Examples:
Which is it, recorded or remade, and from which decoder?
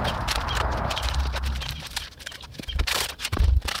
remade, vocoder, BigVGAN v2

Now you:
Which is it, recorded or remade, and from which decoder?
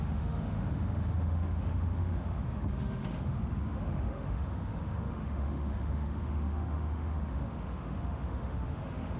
remade, autoencoder, DAC-VAE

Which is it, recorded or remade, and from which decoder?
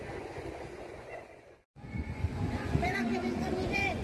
remade, vocoder, Vocos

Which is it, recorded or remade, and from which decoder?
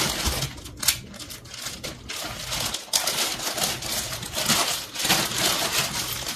recorded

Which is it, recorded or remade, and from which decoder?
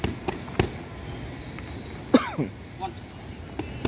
recorded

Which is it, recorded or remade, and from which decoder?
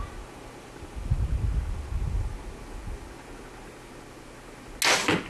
recorded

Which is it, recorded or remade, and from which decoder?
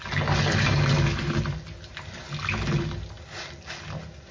recorded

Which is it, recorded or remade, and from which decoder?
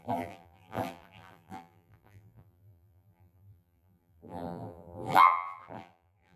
remade, vocoder, BigVGAN v2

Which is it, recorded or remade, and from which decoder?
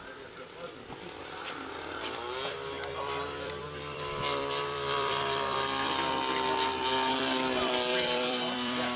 remade, vocoder, BigVGAN v2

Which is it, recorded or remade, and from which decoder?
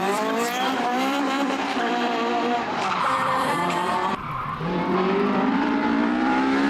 remade, vocoder, BigVGAN v2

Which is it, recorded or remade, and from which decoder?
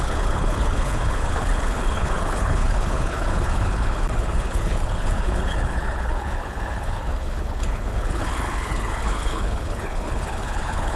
remade, codec, HILCodec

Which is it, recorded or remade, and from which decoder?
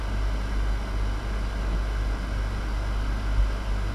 recorded